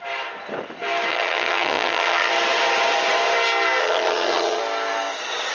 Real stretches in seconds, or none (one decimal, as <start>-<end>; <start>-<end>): 0.0-1.1; 2.3-3.8; 4.6-5.5